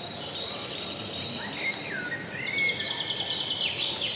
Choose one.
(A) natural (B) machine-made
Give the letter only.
A